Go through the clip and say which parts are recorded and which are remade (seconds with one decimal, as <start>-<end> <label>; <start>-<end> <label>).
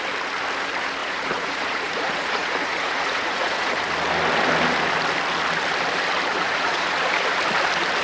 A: 0.0-1.0 recorded; 1.0-3.7 remade; 3.7-6.3 recorded; 6.3-7.3 remade; 7.3-8.0 recorded